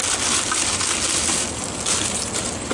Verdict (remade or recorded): recorded